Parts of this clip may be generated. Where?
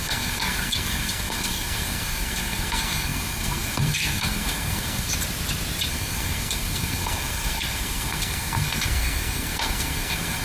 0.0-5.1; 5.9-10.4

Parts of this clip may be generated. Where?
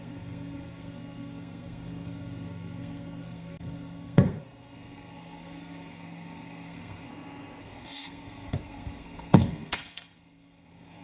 0.0-7.1; 7.6-11.0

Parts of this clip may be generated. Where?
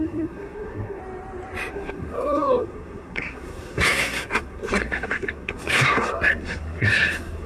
0.0-1.0; 1.7-7.5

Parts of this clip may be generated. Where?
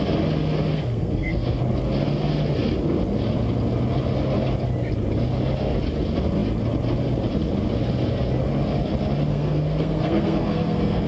0.7-1.6; 9.3-11.1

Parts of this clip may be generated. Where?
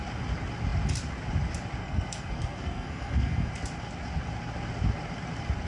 1.8-3.5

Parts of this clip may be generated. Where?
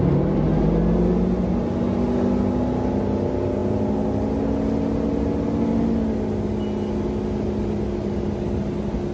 none